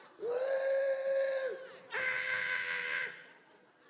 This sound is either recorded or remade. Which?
recorded